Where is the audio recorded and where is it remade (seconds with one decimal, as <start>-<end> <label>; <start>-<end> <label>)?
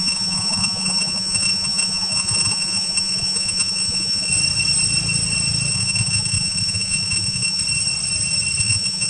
0.0-4.3 remade; 4.3-5.7 recorded; 5.7-7.6 remade; 7.6-8.6 recorded; 8.6-9.1 remade